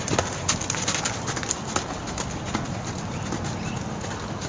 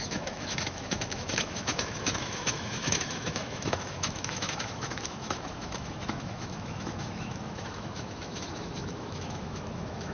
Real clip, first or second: first